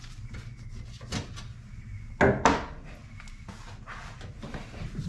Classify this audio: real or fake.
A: real